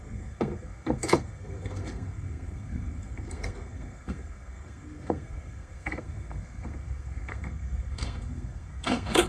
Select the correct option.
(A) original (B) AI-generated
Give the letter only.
B